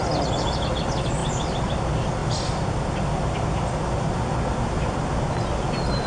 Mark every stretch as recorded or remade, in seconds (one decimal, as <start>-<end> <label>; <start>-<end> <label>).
0.0-6.1 recorded

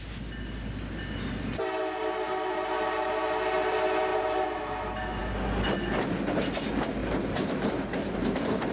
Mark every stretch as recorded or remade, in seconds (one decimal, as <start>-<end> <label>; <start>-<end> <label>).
0.0-4.1 recorded; 4.1-4.6 remade; 4.6-7.0 recorded; 7.0-7.7 remade; 7.7-8.2 recorded; 8.2-8.7 remade

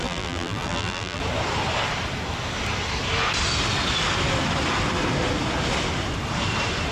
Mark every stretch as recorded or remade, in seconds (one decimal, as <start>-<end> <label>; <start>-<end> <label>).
0.0-1.2 remade; 1.2-6.9 recorded

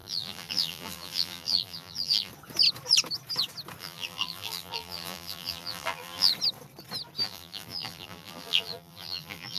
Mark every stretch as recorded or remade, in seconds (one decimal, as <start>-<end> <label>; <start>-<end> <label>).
0.0-2.3 remade; 2.3-3.8 recorded; 3.8-6.3 remade; 6.3-7.2 recorded; 7.2-9.6 remade

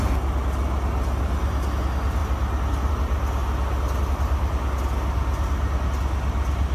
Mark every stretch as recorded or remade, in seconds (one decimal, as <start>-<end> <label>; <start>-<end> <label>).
0.0-6.7 recorded

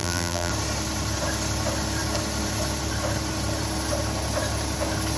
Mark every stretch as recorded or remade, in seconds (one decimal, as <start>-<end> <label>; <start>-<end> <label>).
0.0-0.5 remade; 0.5-5.2 recorded

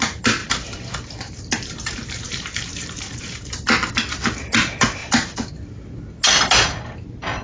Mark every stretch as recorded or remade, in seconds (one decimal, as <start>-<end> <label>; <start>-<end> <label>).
0.0-0.4 recorded; 0.4-3.5 remade; 3.5-5.0 recorded; 5.0-5.5 remade; 5.5-7.4 recorded